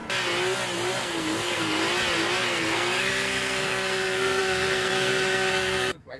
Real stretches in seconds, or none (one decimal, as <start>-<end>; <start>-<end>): 0.0-1.0; 1.8-2.4